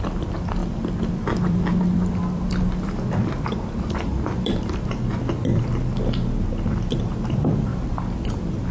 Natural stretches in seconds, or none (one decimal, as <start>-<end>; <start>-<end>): 5.5-7.0; 7.7-8.2